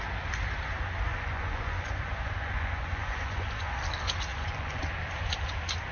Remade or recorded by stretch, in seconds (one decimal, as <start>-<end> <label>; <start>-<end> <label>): 0.0-1.1 recorded; 1.1-3.8 remade; 3.8-4.3 recorded; 4.3-4.8 remade; 4.8-5.9 recorded